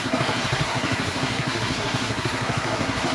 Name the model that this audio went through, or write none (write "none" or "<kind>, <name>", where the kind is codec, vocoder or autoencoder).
codec, SNAC